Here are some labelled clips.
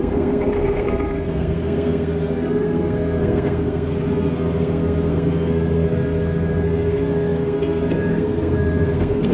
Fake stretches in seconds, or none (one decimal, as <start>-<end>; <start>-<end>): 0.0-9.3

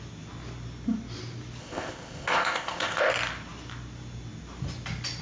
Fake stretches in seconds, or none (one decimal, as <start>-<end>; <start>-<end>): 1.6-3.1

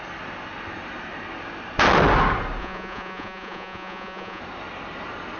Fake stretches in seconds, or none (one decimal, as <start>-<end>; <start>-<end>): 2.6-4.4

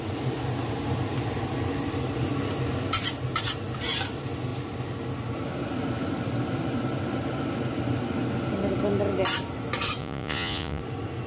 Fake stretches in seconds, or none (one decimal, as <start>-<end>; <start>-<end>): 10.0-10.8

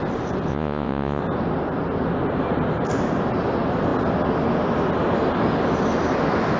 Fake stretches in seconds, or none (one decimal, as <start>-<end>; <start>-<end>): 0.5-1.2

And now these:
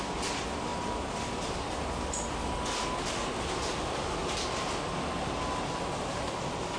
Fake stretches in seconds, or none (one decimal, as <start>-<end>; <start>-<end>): none